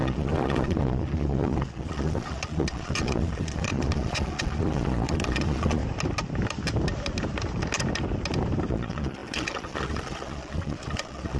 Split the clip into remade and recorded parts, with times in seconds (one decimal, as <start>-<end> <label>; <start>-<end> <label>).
0.0-5.8 remade; 5.8-8.7 recorded; 8.7-11.4 remade